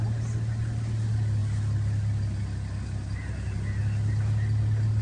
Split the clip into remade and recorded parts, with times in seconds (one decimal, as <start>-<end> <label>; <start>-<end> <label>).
0.0-5.0 recorded